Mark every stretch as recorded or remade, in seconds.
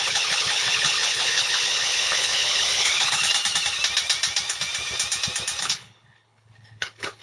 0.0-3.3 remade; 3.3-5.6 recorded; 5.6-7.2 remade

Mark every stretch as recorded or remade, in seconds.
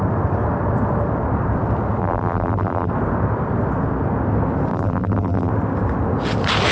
0.0-2.0 recorded; 2.0-2.9 remade; 2.9-4.7 recorded; 4.7-5.5 remade; 5.5-6.7 recorded